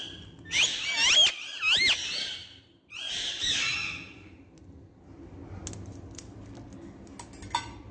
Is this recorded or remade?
recorded